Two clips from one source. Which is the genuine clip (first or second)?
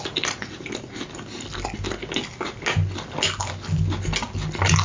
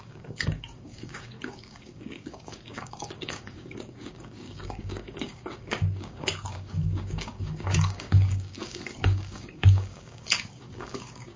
first